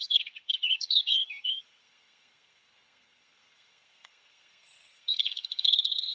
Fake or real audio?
fake